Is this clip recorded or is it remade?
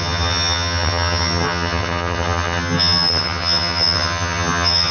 remade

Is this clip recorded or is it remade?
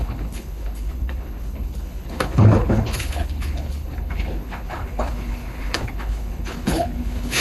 remade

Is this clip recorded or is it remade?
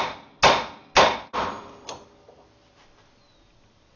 recorded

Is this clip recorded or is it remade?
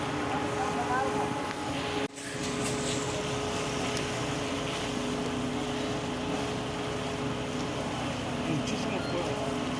recorded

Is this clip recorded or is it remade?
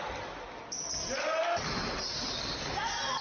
recorded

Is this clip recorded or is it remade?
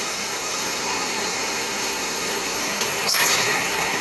remade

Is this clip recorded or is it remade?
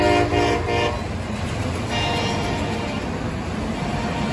recorded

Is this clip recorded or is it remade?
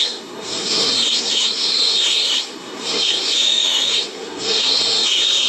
remade